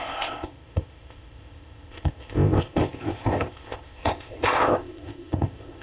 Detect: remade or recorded remade